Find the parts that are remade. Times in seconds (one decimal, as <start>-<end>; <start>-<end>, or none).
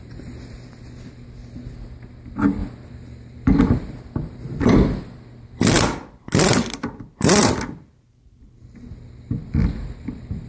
none